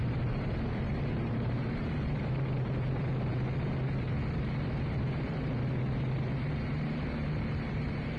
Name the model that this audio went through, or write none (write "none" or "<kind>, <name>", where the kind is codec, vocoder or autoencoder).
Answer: vocoder, BigVGAN v2